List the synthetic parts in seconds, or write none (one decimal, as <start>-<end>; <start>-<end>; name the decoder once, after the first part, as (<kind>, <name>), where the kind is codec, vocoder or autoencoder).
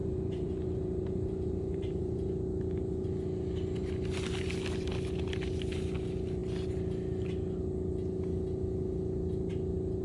0.0-2.3 (vocoder, BigVGAN v2)